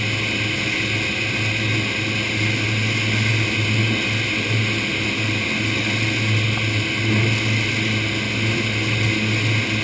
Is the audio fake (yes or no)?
no